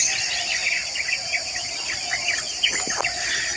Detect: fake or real fake